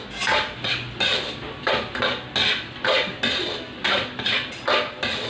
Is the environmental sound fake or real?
real